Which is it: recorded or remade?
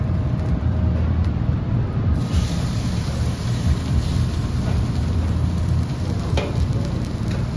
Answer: remade